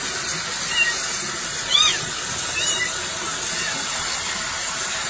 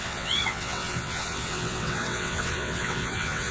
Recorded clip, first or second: first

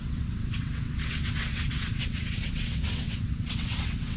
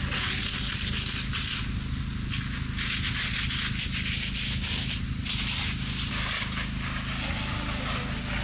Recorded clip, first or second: second